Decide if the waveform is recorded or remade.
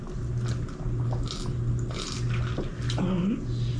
recorded